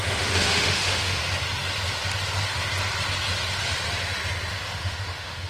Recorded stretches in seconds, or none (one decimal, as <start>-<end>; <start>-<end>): 1.2-4.5